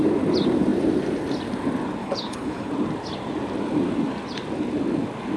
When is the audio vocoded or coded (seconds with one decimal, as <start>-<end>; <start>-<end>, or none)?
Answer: 2.0-2.7